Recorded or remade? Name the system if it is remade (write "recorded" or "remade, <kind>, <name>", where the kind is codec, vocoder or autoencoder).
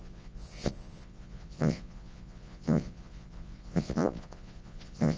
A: remade, vocoder, Vocos